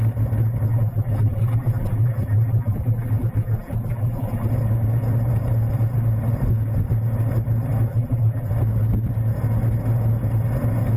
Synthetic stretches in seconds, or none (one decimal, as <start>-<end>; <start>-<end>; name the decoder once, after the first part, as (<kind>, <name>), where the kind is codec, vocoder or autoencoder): 0.7-4.5 (vocoder, BigVGAN v2); 7.9-8.5